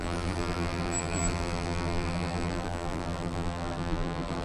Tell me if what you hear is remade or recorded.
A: remade